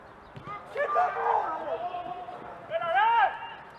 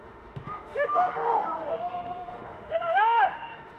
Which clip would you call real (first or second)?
first